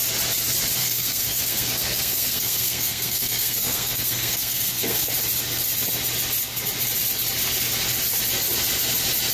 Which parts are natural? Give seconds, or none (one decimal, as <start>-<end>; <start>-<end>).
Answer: 0.0-0.8; 5.1-9.3